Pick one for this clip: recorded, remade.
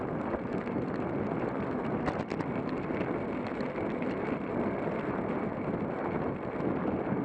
recorded